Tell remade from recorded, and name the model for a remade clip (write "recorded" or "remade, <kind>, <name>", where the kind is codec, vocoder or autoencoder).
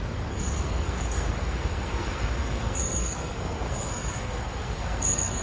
remade, codec, SNAC